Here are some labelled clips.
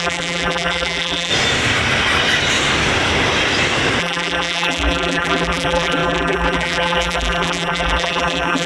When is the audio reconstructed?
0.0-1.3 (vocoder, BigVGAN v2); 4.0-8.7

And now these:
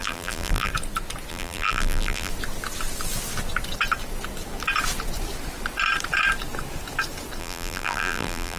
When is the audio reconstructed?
0.0-0.7 (vocoder, BigVGAN v2); 1.3-2.3; 7.4-8.6

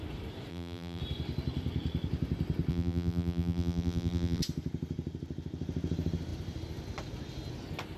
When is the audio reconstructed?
0.5-1.0 (vocoder, BigVGAN v2); 2.7-4.4

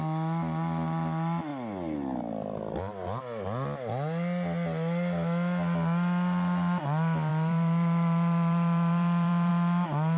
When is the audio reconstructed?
7.3-9.5 (vocoder, BigVGAN v2)

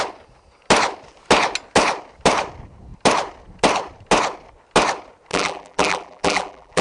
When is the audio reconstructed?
5.3-6.8 (vocoder, BigVGAN v2)

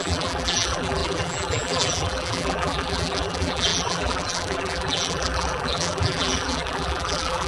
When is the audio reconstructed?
0.0-7.5 (vocoder, BigVGAN v2)

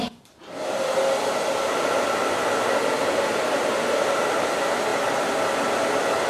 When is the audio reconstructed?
0.0-0.4 (vocoder, BigVGAN v2); 3.0-4.9